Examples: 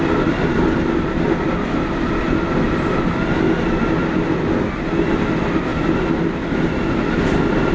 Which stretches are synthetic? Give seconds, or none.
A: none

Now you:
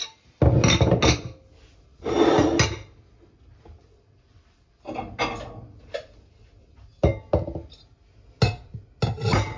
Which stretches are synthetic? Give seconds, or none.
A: none

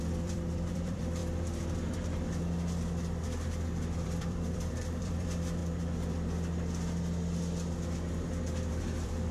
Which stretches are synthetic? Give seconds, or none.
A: 0.0-1.2 (vocoder, BigVGAN v2); 3.8-5.6; 8.7-9.3

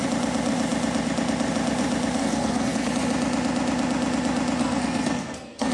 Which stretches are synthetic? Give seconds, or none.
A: 2.2-2.9 (codec, SNAC); 4.6-5.7

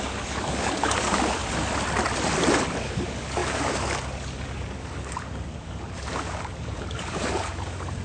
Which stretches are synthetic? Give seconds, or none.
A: 0.0-1.4 (codec, DAC); 2.8-8.0